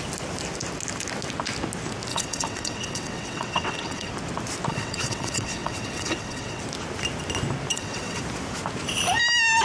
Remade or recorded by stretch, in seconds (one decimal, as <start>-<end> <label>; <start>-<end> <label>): 0.0-2.1 recorded; 2.1-4.1 remade; 4.1-4.7 recorded; 4.7-6.6 remade; 6.6-7.7 recorded; 7.7-8.2 remade; 8.2-9.6 recorded